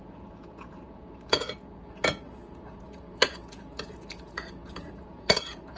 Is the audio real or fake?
fake